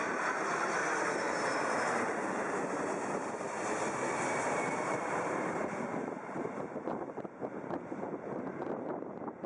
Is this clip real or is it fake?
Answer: fake